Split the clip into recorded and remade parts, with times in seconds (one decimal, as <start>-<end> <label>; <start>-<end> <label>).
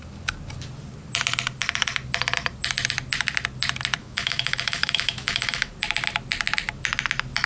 0.0-4.0 recorded; 4.0-5.7 remade; 5.7-7.5 recorded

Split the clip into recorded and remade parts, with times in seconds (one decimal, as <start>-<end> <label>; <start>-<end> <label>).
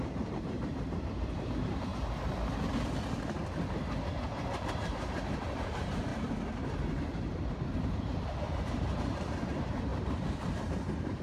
0.0-1.9 remade; 1.9-4.6 recorded; 4.6-6.1 remade; 6.1-8.6 recorded; 8.6-11.2 remade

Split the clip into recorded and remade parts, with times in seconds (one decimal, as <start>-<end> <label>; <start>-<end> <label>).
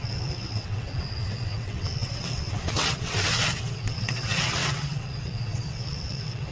0.0-6.5 remade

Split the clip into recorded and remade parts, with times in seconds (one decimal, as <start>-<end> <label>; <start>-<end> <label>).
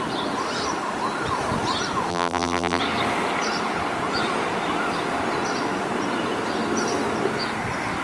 0.0-2.1 recorded; 2.1-2.8 remade; 2.8-8.0 recorded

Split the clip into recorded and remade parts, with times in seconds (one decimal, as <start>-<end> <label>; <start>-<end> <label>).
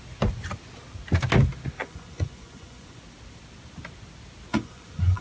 0.0-1.8 recorded; 1.8-3.0 remade; 3.0-4.5 recorded; 4.5-5.2 remade